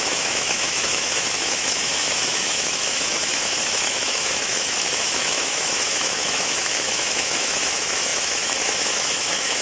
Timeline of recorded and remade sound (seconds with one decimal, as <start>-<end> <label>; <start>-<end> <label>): 0.0-9.6 remade